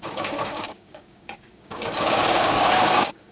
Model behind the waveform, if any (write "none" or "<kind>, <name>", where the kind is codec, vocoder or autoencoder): codec, DAC